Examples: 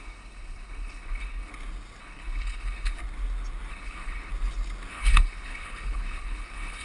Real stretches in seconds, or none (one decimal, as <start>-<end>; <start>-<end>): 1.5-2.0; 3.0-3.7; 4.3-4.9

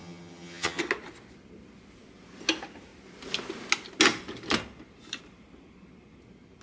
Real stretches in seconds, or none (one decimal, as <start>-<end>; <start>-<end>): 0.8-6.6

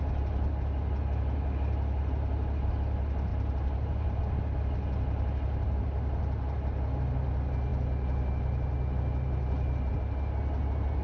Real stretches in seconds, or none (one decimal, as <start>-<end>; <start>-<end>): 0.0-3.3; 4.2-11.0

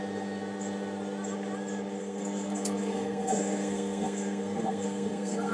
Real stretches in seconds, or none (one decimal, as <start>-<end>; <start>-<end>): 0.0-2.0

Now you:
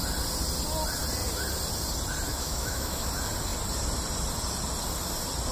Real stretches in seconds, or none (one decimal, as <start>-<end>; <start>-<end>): 0.0-2.3; 3.1-5.5

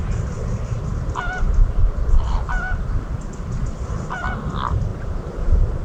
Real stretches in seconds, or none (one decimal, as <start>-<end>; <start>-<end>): none